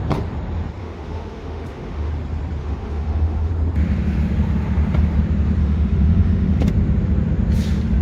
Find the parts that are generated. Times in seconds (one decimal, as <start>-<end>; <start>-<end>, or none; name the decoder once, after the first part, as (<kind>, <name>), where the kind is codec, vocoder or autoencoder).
0.8-2.1 (autoencoder, DAC-VAE); 2.6-3.5; 5.6-6.7